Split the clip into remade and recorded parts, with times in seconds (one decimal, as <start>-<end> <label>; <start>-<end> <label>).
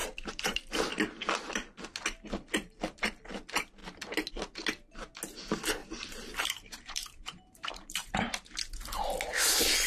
0.0-0.7 remade; 0.7-5.8 recorded; 5.8-8.2 remade; 8.2-9.9 recorded